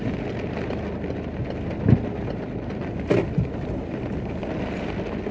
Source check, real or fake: fake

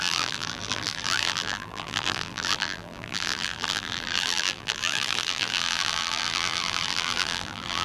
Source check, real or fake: fake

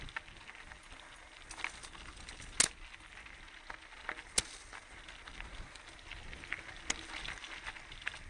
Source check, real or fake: real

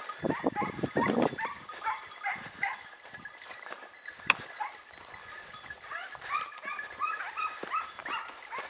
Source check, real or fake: fake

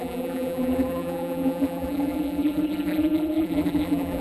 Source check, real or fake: fake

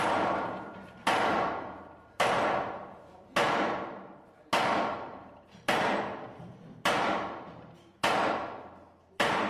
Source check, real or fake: fake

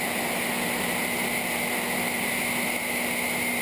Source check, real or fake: real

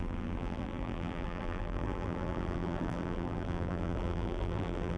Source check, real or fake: fake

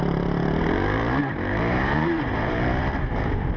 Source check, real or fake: fake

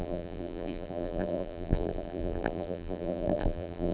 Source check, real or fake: fake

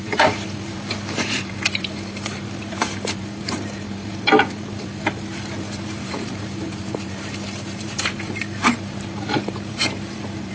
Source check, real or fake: fake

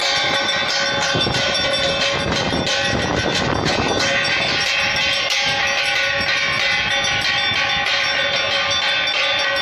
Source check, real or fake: real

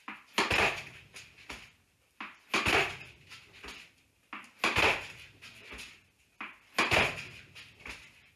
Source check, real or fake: real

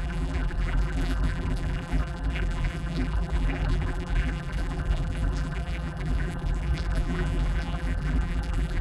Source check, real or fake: fake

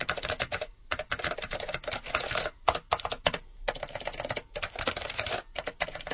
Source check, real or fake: fake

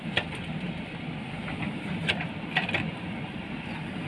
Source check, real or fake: fake